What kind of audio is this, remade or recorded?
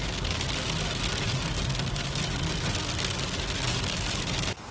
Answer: recorded